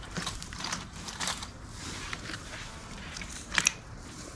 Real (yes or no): no